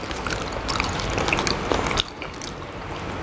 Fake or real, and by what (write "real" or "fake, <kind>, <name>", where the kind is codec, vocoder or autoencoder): real